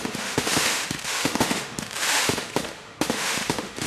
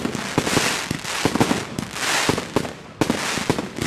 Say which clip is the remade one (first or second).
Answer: first